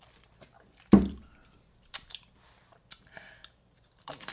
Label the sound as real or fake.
real